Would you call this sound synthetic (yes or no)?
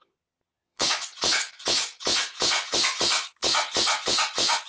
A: yes